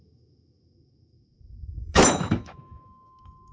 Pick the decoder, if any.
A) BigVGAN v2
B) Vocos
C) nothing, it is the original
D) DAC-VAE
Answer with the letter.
D